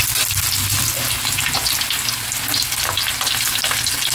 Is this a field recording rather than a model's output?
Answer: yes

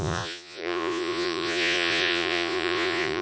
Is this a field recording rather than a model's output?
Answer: no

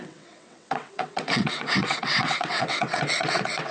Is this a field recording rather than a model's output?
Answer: no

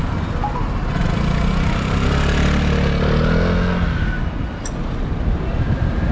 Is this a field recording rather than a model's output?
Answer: yes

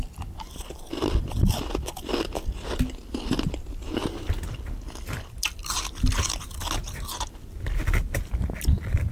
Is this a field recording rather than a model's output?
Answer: yes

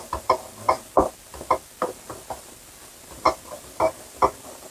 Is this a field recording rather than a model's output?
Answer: yes